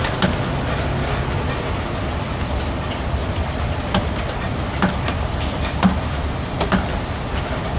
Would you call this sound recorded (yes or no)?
yes